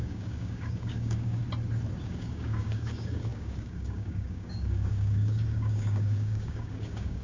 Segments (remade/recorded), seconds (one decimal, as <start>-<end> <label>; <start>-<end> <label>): 0.0-1.4 remade; 1.4-2.0 recorded; 2.0-7.2 remade